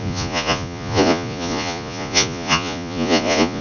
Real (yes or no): no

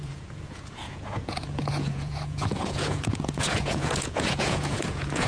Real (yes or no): no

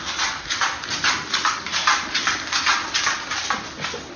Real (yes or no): yes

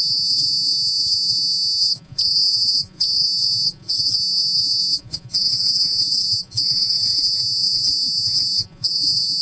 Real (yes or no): no